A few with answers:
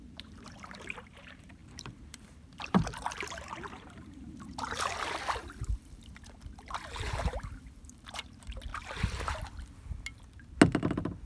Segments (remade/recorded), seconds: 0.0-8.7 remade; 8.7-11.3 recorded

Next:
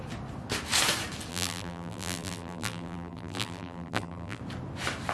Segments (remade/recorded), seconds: 0.0-1.3 recorded; 1.3-4.4 remade; 4.4-5.1 recorded